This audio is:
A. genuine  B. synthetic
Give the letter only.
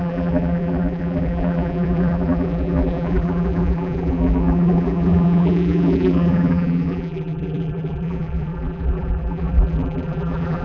B